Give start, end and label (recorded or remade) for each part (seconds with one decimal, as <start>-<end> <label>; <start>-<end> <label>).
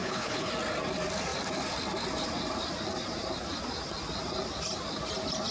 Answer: 0.0-0.5 remade; 0.5-5.5 recorded